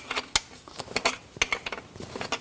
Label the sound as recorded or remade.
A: recorded